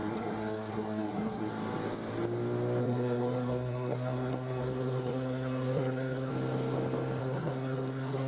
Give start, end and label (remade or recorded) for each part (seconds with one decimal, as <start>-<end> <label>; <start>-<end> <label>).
0.0-1.5 remade; 1.5-2.8 recorded; 2.8-6.3 remade; 6.3-7.2 recorded; 7.2-8.3 remade